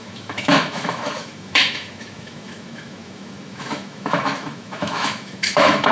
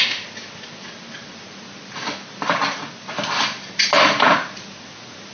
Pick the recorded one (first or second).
second